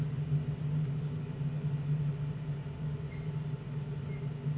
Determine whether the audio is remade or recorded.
recorded